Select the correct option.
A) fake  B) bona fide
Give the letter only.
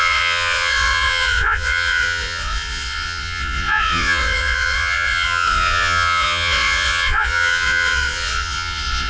A